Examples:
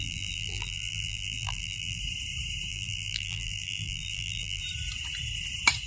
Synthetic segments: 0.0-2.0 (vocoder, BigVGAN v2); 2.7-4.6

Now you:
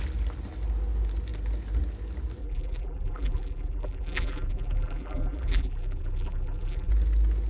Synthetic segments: 2.4-6.9 (vocoder, BigVGAN v2)

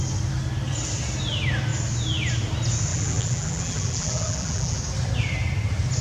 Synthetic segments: 2.9-4.8 (vocoder, BigVGAN v2)

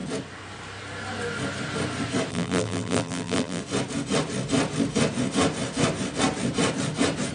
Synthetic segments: 2.3-3.6 (vocoder, BigVGAN v2)

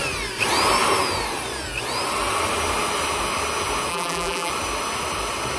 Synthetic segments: 3.9-4.5 (vocoder, BigVGAN v2)

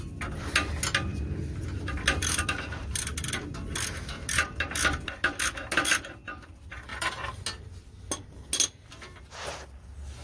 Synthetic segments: 1.1-6.2 (vocoder, BigVGAN v2)